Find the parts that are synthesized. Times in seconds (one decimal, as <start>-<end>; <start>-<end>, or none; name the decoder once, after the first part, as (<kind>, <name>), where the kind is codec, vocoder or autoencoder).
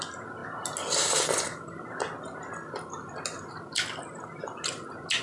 none